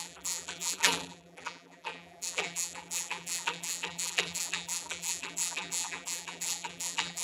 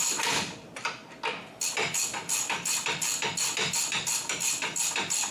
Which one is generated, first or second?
first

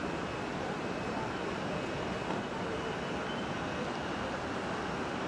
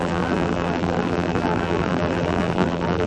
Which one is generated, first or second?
second